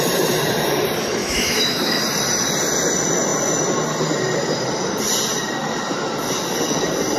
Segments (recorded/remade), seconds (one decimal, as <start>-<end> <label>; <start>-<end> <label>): 0.0-1.2 recorded; 1.2-2.0 remade; 2.0-7.2 recorded